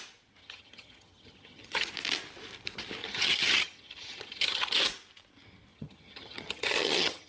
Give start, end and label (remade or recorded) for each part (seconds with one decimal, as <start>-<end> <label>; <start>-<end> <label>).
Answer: 0.0-0.4 recorded; 0.4-1.9 remade; 1.9-3.0 recorded; 3.0-4.8 remade; 4.8-5.7 recorded; 5.7-7.3 remade